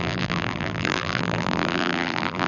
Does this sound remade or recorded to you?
remade